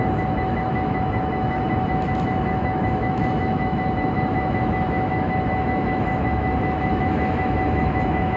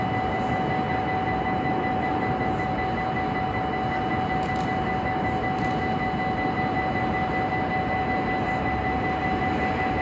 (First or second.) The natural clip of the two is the second